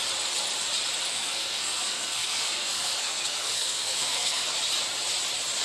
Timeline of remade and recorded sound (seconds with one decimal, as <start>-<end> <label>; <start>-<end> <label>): 0.0-1.1 recorded; 1.1-4.5 remade; 4.5-5.6 recorded